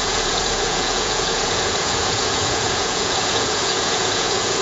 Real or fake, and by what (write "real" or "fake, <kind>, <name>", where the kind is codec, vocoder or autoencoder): fake, vocoder, Vocos